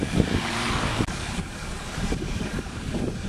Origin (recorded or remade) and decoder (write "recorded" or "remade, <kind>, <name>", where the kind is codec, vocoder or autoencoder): remade, codec, DAC